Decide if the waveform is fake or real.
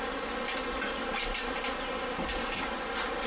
real